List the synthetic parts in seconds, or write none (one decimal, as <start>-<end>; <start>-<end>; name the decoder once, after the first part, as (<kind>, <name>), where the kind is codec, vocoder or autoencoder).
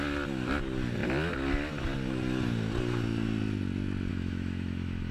4.1-5.1 (autoencoder, DAC-VAE)